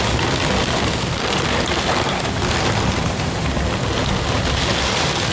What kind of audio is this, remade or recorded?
recorded